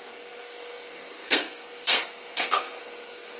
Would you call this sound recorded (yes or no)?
no